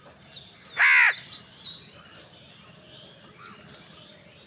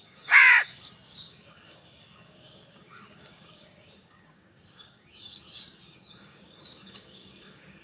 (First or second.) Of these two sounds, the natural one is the first